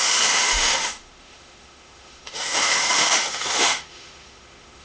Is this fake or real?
fake